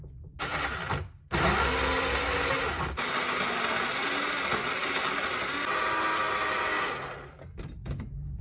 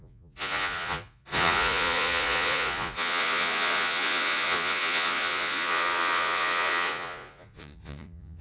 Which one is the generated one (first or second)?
second